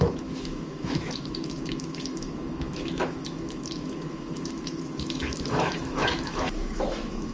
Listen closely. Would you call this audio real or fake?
fake